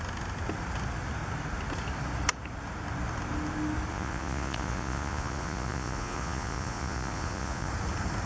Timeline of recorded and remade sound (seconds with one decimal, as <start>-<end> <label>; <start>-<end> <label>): 0.0-3.9 recorded; 3.9-7.7 remade; 7.7-8.3 recorded